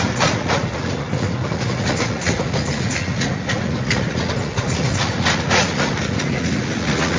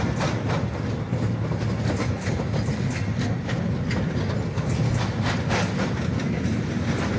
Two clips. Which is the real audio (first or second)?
second